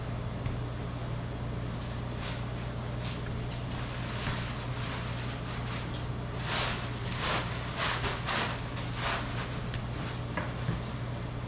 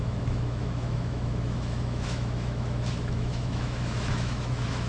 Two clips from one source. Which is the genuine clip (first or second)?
first